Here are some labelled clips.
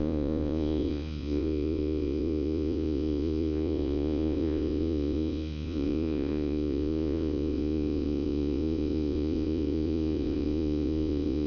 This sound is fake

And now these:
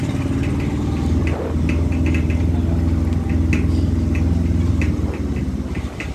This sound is real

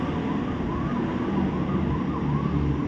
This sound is real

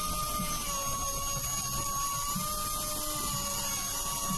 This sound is real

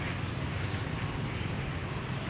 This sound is real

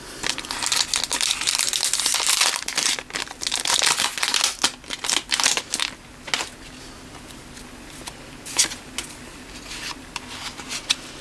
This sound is real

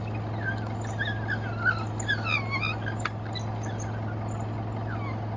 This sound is real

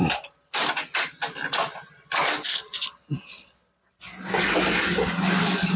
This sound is real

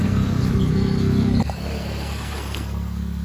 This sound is fake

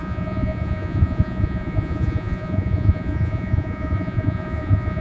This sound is fake